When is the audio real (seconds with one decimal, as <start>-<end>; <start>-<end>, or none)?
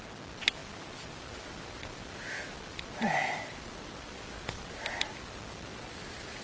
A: 0.0-6.4